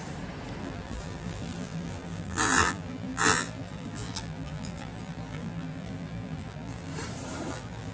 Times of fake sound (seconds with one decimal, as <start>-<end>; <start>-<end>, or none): 0.6-6.9; 7.5-7.9